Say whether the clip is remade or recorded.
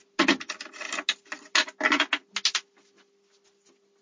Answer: recorded